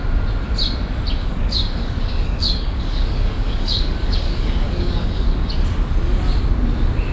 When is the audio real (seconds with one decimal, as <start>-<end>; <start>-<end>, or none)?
0.0-1.2; 5.5-7.1